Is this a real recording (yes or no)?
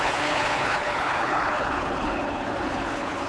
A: no